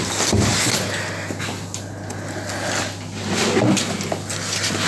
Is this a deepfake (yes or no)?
no